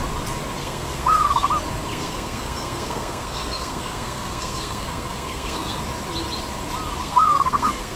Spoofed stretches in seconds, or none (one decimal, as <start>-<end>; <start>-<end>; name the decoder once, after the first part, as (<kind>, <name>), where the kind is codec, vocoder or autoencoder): 0.6-1.5 (codec, SNAC); 1.9-5.8; 7.0-8.0